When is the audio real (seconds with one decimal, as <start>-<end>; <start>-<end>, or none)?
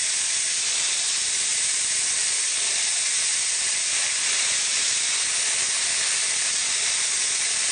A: 0.0-7.7